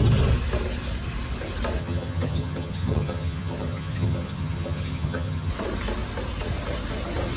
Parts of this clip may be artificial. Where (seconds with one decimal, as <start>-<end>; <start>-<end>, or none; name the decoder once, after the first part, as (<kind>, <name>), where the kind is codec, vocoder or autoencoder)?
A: 1.8-5.5 (vocoder, HiFi-GAN)